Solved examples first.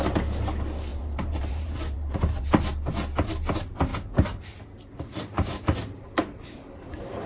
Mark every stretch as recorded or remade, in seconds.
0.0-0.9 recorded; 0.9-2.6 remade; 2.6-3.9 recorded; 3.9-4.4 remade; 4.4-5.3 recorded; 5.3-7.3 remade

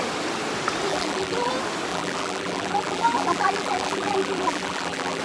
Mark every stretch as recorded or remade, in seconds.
0.0-0.9 recorded; 0.9-1.5 remade; 1.5-1.9 recorded; 1.9-5.2 remade

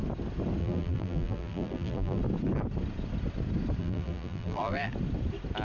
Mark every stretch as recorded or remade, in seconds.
0.0-0.6 recorded; 0.6-2.2 remade; 2.2-3.8 recorded; 3.8-4.9 remade; 4.9-5.6 recorded

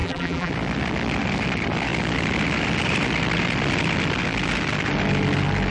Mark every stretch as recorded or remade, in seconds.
0.0-0.5 remade; 0.5-5.7 recorded

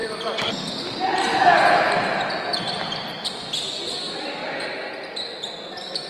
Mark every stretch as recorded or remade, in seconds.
0.0-1.9 remade; 1.9-6.1 recorded

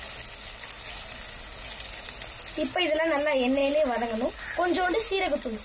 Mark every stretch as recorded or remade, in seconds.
0.0-5.6 recorded